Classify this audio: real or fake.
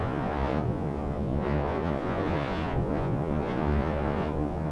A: fake